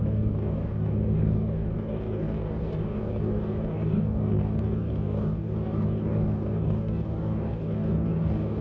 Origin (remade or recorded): remade